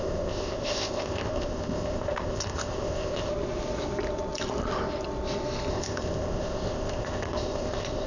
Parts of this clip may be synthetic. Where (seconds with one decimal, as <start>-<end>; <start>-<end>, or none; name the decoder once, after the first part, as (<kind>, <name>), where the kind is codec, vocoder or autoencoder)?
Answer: 0.0-3.3 (codec, ZipCodec); 5.7-8.1